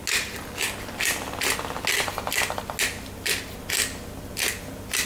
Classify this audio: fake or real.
real